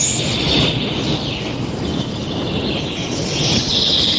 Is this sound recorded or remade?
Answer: recorded